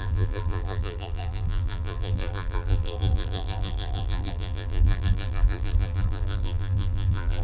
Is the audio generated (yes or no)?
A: yes